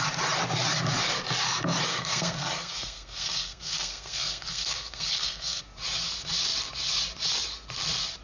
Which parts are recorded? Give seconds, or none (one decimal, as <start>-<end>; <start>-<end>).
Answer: 0.0-1.9; 5.6-8.2